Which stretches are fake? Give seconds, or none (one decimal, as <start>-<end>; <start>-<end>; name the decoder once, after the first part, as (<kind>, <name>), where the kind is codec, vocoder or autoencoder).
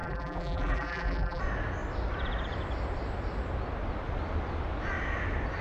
0.0-1.4 (vocoder, BigVGAN v2)